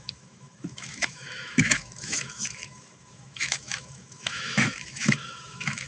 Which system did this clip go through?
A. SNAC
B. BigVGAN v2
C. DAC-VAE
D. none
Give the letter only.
C